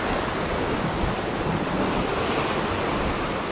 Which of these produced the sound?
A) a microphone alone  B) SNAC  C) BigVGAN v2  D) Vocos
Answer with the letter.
A